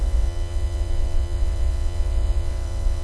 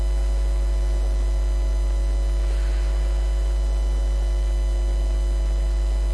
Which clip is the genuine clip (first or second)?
second